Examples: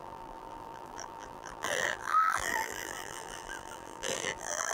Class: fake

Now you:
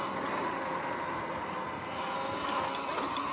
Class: real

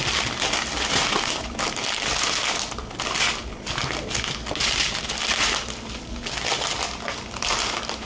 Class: real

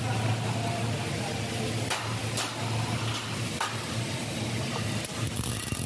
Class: real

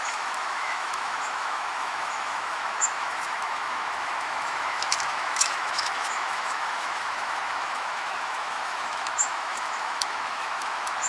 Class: fake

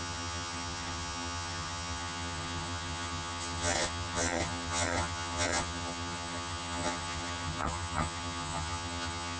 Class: fake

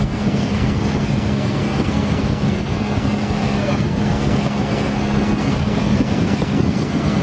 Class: fake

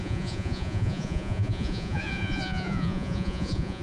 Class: fake